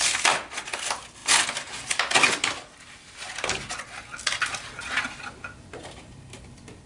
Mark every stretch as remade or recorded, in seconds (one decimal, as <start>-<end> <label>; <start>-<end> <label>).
0.0-5.8 recorded; 5.8-6.4 remade; 6.4-6.9 recorded